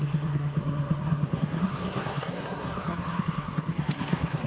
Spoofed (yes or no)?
yes